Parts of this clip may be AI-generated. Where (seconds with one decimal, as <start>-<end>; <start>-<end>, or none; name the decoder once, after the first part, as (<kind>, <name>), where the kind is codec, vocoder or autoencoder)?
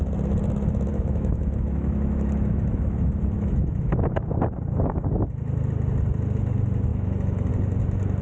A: 0.9-4.1 (autoencoder, DAC-VAE); 6.9-7.5